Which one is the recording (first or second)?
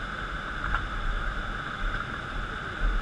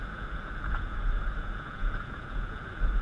first